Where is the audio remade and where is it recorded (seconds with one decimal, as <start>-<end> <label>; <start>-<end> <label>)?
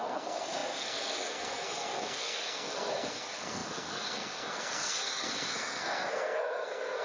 0.0-7.0 remade